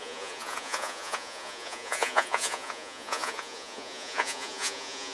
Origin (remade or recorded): remade